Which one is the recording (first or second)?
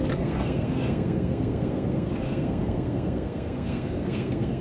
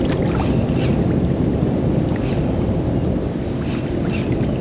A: second